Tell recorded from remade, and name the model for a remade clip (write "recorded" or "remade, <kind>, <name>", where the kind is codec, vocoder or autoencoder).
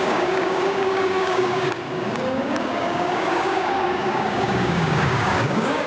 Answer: remade, codec, DAC